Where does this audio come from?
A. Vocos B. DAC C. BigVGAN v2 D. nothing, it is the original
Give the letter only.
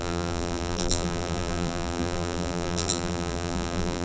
C